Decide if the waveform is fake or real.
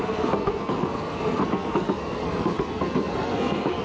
fake